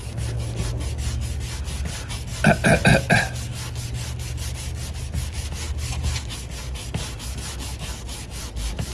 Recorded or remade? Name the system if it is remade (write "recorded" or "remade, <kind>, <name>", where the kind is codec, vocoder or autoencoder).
recorded